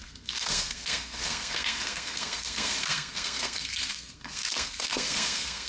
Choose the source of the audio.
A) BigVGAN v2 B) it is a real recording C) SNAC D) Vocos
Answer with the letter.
C